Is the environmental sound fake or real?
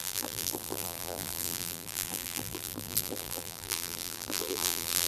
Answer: fake